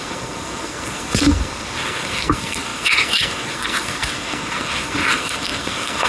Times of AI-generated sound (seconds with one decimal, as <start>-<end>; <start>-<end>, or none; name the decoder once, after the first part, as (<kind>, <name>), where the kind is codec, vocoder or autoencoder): 0.0-6.1 (codec, SNAC)